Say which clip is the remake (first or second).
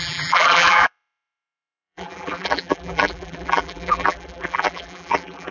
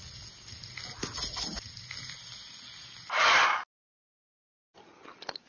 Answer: first